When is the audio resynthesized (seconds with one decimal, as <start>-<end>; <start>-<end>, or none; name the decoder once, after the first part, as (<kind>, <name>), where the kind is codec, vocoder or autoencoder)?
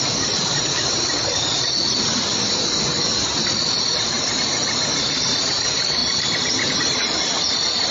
0.0-6.0 (vocoder, BigVGAN v2); 6.7-7.9